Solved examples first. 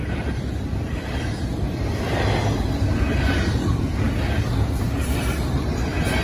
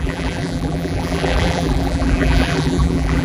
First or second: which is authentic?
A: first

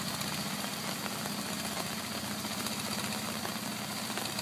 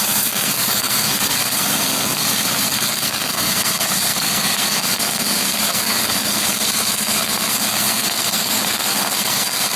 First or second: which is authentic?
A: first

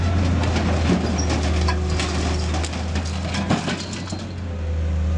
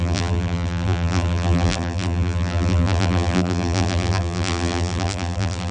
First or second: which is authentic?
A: first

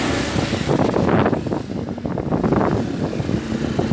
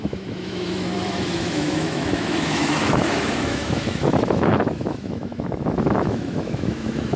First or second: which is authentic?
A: first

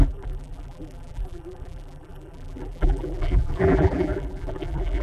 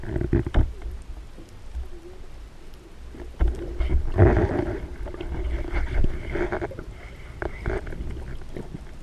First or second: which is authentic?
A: second